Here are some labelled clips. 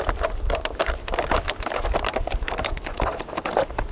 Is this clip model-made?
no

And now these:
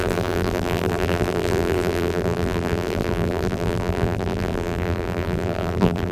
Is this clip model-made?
yes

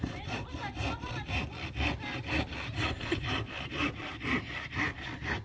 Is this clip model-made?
no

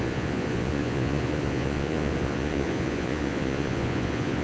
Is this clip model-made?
yes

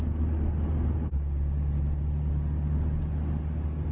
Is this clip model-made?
no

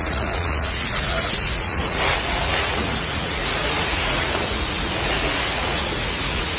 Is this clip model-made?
yes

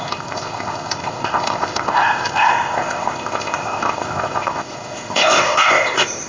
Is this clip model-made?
yes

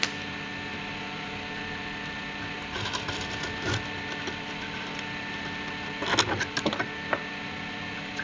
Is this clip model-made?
no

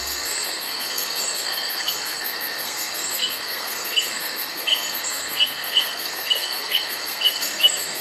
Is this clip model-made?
yes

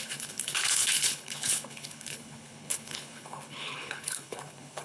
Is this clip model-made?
yes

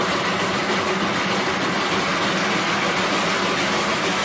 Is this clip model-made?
no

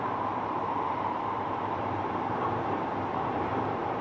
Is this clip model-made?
yes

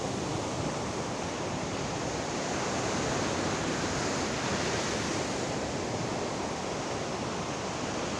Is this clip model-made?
no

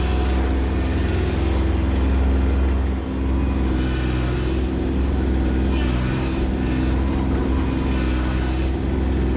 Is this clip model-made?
no